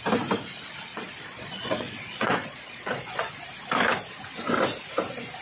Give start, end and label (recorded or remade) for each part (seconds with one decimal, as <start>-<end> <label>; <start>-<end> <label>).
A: 0.0-0.9 recorded; 0.9-3.4 remade; 3.4-5.4 recorded